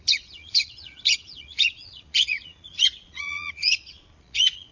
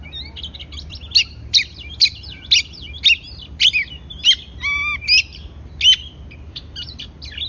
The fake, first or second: first